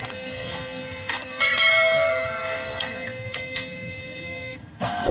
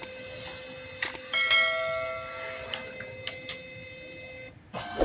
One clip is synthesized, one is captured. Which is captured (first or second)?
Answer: second